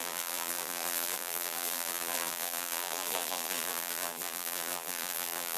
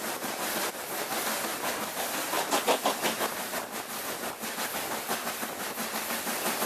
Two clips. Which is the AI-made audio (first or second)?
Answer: first